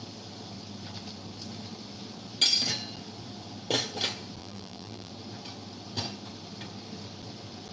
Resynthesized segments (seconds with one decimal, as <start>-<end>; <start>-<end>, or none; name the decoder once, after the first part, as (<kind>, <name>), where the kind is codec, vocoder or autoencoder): 4.4-5.1 (vocoder, BigVGAN v2)